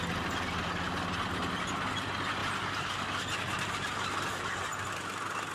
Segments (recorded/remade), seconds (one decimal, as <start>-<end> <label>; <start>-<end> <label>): 0.0-5.5 recorded